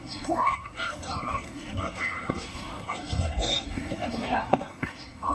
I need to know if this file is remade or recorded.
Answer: remade